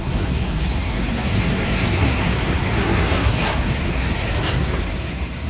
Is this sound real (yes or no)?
no